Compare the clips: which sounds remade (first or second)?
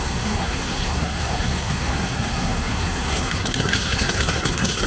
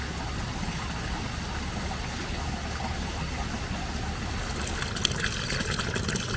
first